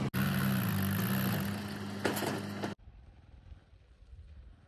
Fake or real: real